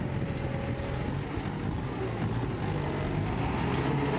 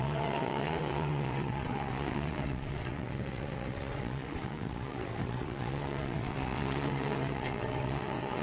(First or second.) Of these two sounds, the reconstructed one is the second